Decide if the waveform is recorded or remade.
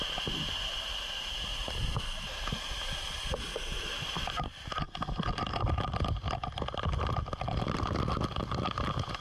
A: recorded